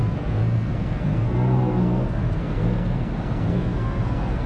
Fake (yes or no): yes